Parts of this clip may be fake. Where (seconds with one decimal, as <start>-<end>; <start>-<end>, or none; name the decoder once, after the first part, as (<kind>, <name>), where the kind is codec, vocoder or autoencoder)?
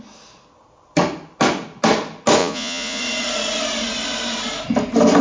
2.4-3.0 (vocoder, Vocos)